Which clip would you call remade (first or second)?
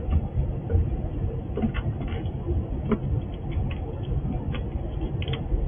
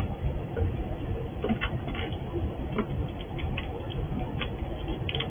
second